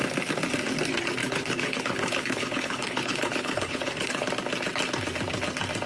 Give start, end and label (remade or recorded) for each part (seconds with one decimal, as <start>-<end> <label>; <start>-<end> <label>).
0.0-1.2 recorded; 1.2-4.3 remade; 4.3-5.9 recorded